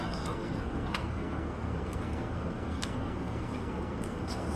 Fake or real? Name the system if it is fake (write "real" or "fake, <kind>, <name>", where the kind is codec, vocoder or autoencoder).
fake, codec, SNAC